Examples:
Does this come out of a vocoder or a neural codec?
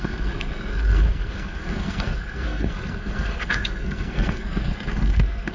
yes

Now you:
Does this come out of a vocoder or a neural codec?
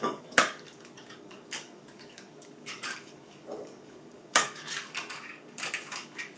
yes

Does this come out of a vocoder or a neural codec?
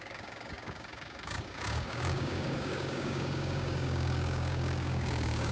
yes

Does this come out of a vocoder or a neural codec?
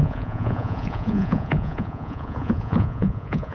yes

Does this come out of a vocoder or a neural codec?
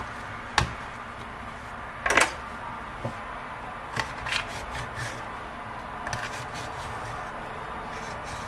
no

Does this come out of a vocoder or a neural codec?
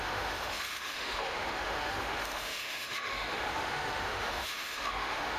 yes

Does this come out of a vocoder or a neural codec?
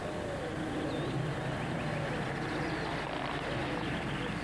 no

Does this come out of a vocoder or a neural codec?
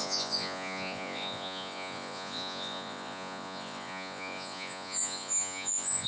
yes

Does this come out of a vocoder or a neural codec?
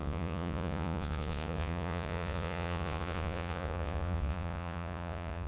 yes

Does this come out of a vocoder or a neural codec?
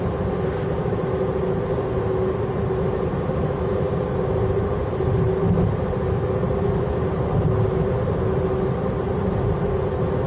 no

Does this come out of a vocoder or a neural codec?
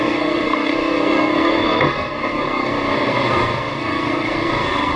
yes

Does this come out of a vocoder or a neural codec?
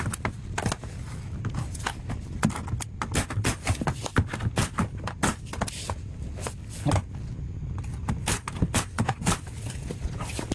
no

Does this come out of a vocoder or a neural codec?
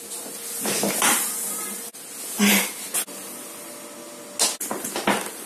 no